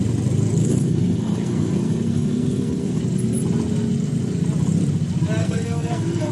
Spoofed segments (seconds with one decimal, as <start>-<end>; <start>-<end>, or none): 0.6-3.0; 5.4-6.3